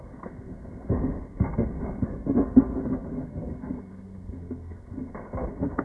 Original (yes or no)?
no